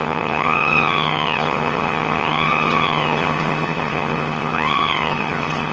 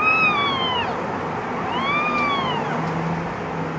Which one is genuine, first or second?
second